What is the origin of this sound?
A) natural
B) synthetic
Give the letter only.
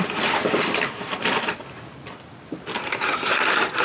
A